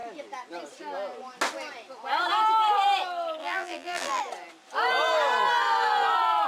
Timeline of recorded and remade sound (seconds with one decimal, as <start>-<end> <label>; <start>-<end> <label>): 0.0-3.4 recorded; 3.4-4.2 remade; 4.2-6.5 recorded